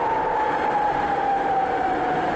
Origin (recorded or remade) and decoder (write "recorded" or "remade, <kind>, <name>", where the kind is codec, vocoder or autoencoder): recorded